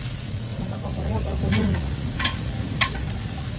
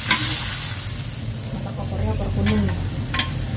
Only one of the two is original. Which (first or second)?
second